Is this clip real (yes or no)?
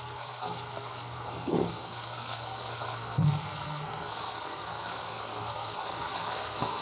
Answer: no